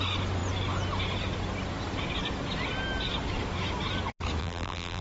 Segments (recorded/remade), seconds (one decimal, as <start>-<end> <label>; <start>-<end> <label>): 0.0-4.4 recorded; 4.4-5.0 remade